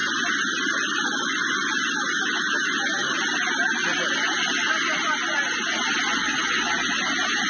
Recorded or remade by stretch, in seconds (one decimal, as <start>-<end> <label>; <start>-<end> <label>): 0.0-6.2 recorded; 6.2-6.7 remade; 6.7-7.5 recorded

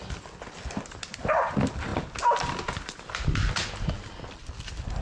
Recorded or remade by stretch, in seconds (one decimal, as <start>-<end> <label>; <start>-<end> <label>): 0.0-5.0 recorded

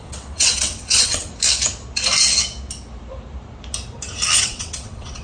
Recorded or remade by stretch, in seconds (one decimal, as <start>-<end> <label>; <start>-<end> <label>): 0.0-1.3 remade; 1.3-4.4 recorded; 4.4-5.2 remade

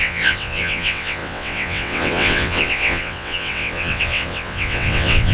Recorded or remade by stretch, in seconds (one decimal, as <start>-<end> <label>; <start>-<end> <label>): 0.0-5.3 remade

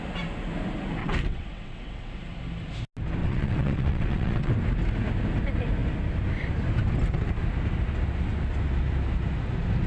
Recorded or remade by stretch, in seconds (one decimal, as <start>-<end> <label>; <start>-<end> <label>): 0.0-1.0 recorded; 1.0-2.1 remade; 2.1-3.2 recorded; 3.2-4.5 remade; 4.5-9.9 recorded

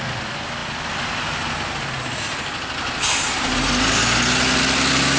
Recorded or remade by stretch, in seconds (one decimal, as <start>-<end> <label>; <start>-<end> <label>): 0.0-5.2 recorded